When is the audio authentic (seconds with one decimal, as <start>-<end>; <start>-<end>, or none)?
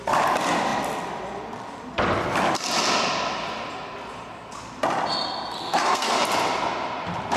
0.0-5.6; 6.2-7.4